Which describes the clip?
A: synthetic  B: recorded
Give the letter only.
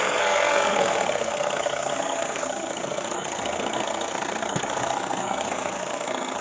A